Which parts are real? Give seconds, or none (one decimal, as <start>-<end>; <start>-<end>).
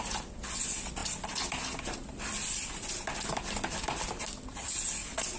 0.0-5.4